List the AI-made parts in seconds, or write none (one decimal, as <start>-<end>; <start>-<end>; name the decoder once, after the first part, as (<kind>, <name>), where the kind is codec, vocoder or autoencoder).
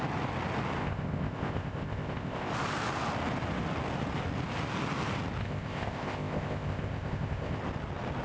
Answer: 0.8-2.5 (codec, ZipCodec); 5.4-7.6